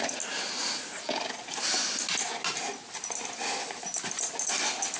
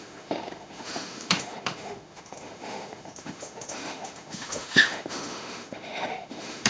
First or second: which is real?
first